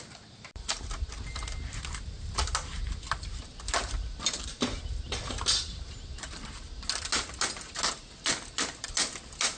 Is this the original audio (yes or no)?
yes